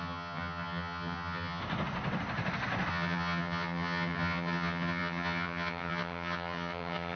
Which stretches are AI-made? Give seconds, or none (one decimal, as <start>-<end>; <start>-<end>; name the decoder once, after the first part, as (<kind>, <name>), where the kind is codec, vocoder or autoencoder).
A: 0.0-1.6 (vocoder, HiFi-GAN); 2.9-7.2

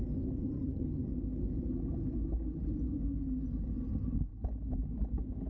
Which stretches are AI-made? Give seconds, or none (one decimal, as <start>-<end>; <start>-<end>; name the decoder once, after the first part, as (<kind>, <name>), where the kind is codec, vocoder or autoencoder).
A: 0.4-1.1 (vocoder, HiFi-GAN)

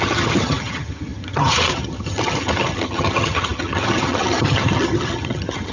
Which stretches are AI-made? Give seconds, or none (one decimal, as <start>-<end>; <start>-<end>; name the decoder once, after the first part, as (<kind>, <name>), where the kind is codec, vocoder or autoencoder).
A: 0.0-5.7 (vocoder, HiFi-GAN)

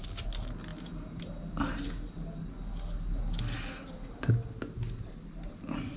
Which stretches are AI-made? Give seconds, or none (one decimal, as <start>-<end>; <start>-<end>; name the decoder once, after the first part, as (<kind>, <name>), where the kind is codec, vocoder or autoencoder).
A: none